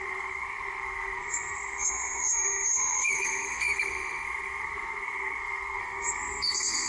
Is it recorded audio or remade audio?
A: remade